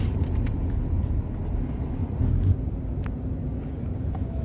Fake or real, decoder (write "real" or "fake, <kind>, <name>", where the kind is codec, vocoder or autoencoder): real